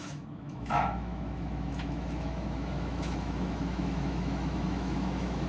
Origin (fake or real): fake